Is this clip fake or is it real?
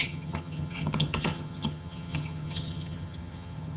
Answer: fake